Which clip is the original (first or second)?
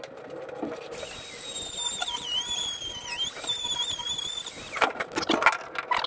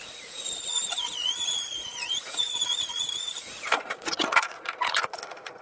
first